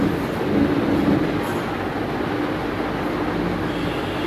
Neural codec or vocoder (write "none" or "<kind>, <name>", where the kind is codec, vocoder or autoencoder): none